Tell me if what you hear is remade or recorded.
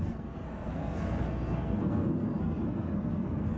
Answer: remade